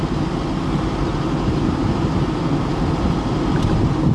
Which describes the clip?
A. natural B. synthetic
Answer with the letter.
A